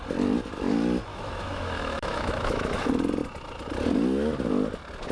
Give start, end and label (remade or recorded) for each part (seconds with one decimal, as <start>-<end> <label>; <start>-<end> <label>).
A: 0.0-1.1 recorded; 1.1-2.8 remade; 2.8-5.1 recorded